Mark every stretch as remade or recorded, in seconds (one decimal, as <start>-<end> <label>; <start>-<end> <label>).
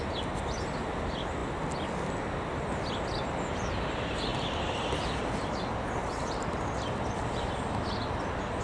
0.0-4.3 recorded; 4.3-7.8 remade; 7.8-8.6 recorded